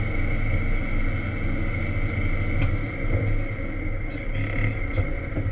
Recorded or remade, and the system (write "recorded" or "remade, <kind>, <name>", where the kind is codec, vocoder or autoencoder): recorded